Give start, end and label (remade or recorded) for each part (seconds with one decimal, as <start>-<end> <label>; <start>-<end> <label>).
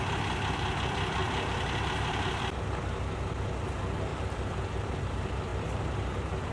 0.0-1.2 recorded; 1.2-2.4 remade; 2.4-4.1 recorded; 4.1-5.1 remade; 5.1-5.5 recorded; 5.5-6.5 remade